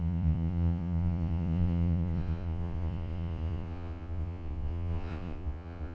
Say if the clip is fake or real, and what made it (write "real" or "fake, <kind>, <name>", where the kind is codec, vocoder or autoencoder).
fake, vocoder, Vocos